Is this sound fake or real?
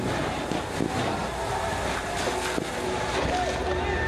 real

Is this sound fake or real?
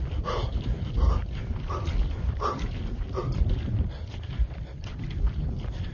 real